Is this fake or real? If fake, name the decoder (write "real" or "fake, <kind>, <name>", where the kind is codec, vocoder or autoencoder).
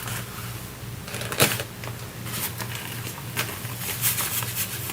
real